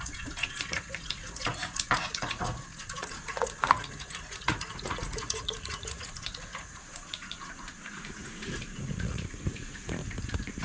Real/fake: fake